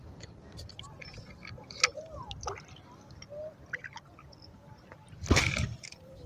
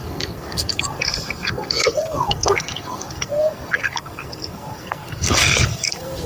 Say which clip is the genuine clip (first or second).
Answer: first